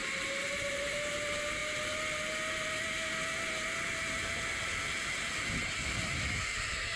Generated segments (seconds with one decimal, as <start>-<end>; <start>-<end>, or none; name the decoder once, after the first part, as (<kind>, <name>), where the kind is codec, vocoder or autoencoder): 0.0-1.6 (vocoder, BigVGAN v2); 5.8-7.0